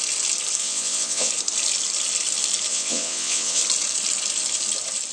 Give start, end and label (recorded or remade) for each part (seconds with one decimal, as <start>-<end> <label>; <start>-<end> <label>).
0.0-0.6 recorded; 0.6-1.3 remade; 1.3-2.7 recorded; 2.7-3.6 remade; 3.6-5.1 recorded